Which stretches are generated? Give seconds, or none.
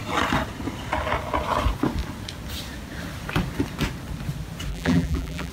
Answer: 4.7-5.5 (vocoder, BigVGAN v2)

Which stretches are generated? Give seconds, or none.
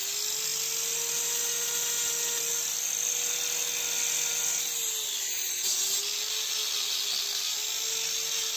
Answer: none